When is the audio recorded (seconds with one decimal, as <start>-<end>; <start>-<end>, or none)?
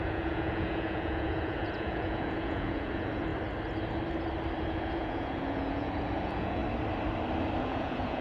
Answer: 3.3-4.6; 6.6-7.7